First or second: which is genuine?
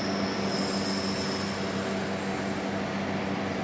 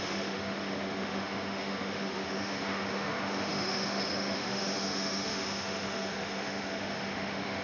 first